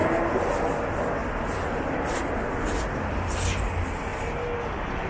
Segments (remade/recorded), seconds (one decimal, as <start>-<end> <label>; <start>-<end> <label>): 0.0-5.1 recorded